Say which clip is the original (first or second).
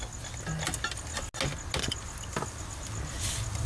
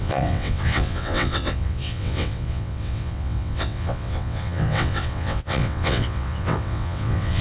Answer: first